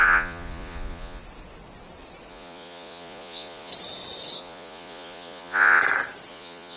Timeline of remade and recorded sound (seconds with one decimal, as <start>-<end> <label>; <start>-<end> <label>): 0.0-1.2 remade; 1.2-2.3 recorded; 2.3-3.7 remade; 3.7-4.4 recorded; 4.4-5.8 remade; 5.8-6.3 recorded; 6.3-6.8 remade